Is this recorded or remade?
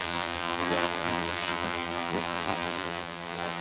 remade